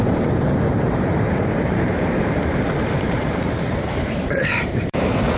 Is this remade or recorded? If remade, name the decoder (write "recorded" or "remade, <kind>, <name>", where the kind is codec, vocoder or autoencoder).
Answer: remade, vocoder, BigVGAN v2